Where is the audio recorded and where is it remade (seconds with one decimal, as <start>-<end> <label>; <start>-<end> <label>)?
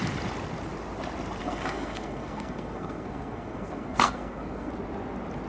0.0-1.4 recorded; 1.4-4.7 remade; 4.7-5.5 recorded